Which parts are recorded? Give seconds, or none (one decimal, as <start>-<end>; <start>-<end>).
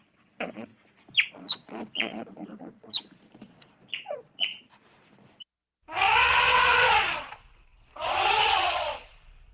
0.7-1.3; 4.5-6.5